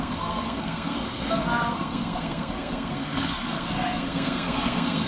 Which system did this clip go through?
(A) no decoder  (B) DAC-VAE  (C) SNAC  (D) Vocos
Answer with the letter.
C